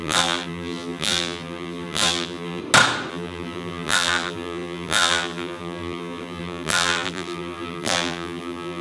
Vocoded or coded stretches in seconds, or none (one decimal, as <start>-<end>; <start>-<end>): 0.0-2.6; 3.1-8.8